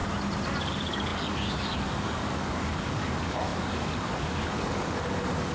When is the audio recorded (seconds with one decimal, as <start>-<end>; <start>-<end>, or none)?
0.0-0.6